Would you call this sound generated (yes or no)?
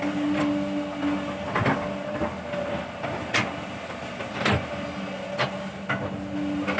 no